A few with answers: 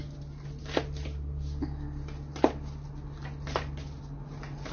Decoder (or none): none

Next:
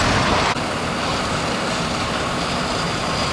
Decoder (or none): none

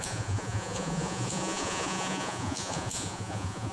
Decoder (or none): vocoder, Vocos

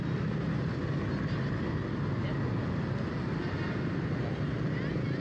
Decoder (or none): none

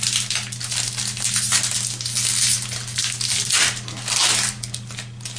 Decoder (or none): none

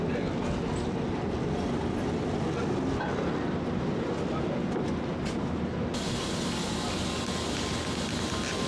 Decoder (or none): none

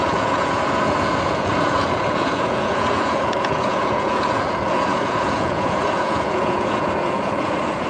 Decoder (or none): vocoder, Vocos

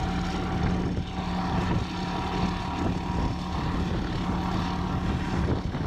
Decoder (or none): none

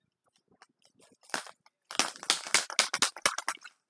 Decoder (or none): none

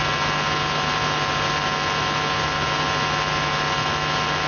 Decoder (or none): none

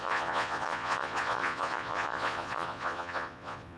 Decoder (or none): vocoder, Vocos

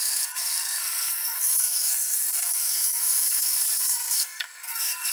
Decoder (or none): codec, SNAC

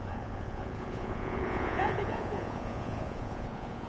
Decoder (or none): vocoder, Vocos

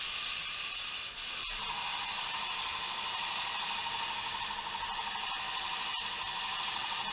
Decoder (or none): none